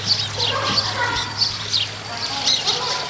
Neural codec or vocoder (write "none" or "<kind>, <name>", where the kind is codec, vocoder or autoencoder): none